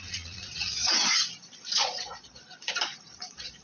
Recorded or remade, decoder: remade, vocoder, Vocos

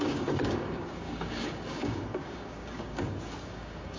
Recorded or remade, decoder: remade, codec, DAC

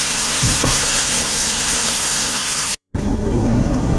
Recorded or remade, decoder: remade, codec, SNAC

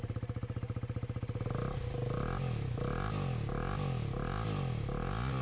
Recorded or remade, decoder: recorded